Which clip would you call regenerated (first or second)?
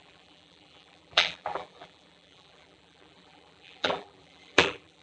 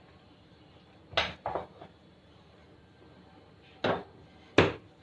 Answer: first